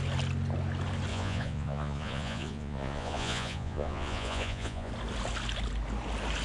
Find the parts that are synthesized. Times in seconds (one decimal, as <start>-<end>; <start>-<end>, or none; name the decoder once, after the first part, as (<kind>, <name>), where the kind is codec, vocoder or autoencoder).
1.1-4.9 (vocoder, Vocos)